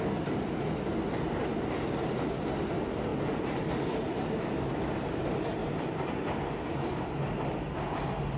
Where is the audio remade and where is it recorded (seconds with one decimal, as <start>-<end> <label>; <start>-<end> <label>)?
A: 0.0-8.4 recorded